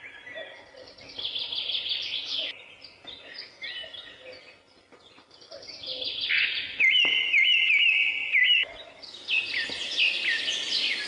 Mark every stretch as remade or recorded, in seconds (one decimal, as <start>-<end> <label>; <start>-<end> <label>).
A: 0.0-5.9 recorded; 5.9-6.6 remade; 6.6-8.4 recorded; 8.4-8.9 remade; 8.9-11.1 recorded